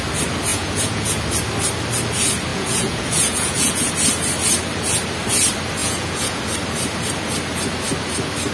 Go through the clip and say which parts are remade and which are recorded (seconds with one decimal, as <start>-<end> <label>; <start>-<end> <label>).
0.0-0.5 recorded; 0.5-1.2 remade; 1.2-2.5 recorded; 2.5-3.9 remade; 3.9-5.8 recorded; 5.8-6.4 remade; 6.4-8.5 recorded